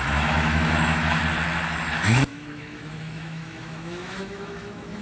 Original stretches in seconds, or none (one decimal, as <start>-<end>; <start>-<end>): 1.2-1.9